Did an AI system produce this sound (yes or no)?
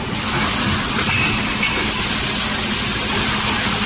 no